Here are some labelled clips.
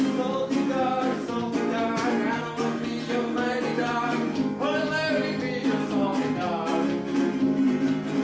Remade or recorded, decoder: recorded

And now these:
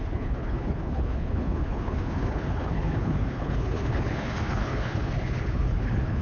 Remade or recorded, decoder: remade, codec, HILCodec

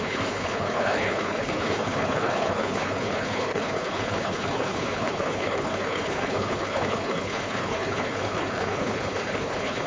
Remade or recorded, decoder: remade, codec, HILCodec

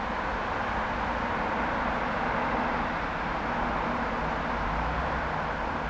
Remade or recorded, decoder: recorded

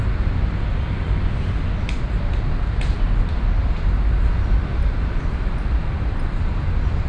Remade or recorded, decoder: recorded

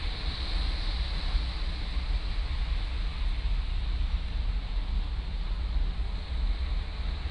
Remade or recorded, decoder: recorded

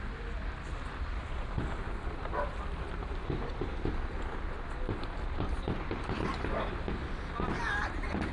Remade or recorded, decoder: recorded